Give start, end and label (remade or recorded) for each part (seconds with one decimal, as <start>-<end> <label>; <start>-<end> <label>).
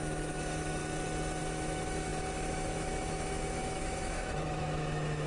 0.0-0.8 remade; 0.8-1.4 recorded; 1.4-5.3 remade